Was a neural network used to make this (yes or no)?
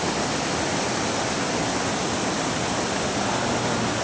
no